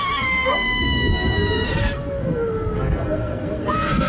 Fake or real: fake